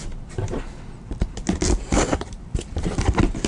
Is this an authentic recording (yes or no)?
no